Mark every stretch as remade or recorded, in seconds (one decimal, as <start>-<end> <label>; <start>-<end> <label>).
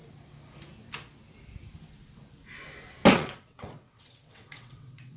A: 0.0-3.1 recorded; 3.1-5.2 remade